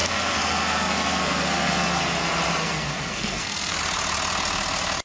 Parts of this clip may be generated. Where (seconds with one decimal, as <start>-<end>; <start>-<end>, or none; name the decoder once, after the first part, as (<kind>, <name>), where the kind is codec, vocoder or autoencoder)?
0.0-2.0 (codec, SNAC); 2.6-3.8